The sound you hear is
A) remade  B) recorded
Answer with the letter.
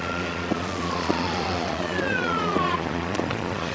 A